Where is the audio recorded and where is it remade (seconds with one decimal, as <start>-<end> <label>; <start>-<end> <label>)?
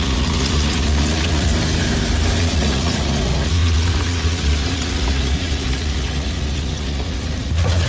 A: 0.0-1.5 remade; 1.5-2.4 recorded; 2.4-7.9 remade